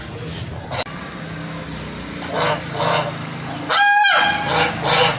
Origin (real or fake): real